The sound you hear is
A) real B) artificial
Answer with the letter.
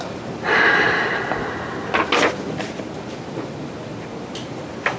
A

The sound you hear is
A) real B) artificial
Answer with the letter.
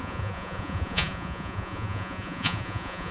B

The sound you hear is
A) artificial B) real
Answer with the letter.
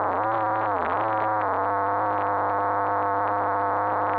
B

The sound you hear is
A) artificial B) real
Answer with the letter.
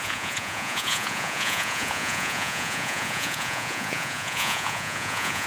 A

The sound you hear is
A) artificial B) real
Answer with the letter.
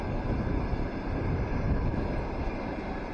B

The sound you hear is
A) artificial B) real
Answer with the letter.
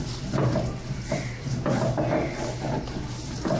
B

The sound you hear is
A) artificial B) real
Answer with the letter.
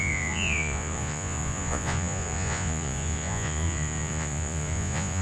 A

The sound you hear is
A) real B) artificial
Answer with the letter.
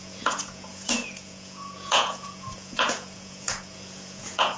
B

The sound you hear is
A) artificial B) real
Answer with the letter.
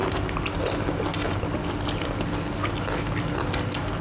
B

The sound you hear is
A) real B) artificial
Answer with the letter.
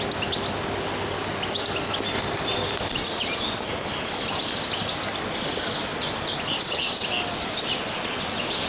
A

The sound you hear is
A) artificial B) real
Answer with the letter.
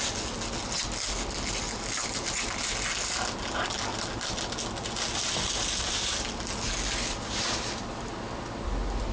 B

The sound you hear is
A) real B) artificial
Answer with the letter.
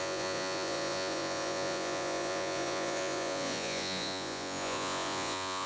B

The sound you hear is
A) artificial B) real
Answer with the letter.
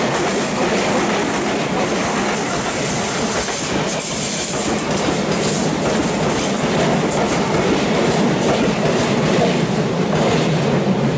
B